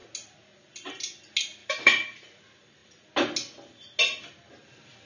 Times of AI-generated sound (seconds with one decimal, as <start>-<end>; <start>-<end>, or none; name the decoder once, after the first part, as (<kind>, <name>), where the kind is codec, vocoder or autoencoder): 1.6-2.4 (vocoder, BigVGAN v2)